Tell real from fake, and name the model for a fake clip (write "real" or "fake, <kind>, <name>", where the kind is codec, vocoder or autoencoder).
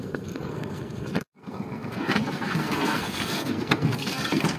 fake, codec, SNAC